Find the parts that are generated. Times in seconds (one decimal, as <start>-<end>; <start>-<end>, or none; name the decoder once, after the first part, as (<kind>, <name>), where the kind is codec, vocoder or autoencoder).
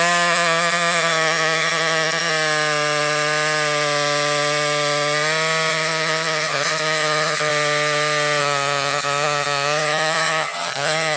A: 0.0-2.3 (vocoder, HiFi-GAN); 5.7-7.5; 8.4-11.2